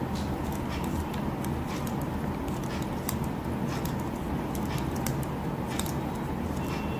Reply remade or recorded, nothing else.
recorded